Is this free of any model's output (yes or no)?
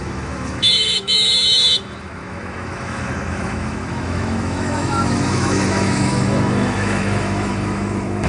no